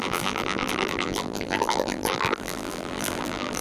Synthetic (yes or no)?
yes